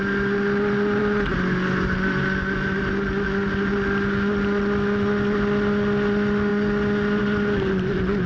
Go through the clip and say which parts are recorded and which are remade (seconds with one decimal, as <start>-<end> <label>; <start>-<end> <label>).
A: 0.0-8.3 recorded